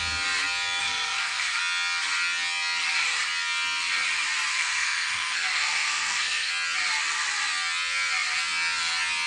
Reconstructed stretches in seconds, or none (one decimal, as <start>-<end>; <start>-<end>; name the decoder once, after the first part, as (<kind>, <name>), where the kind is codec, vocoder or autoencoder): 0.8-1.6 (codec, SNAC); 4.5-6.5